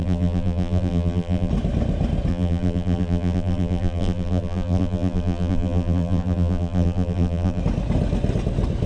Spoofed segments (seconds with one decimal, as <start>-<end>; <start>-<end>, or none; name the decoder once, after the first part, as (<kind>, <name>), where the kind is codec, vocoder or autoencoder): 0.0-1.5 (vocoder, BigVGAN v2); 2.3-7.6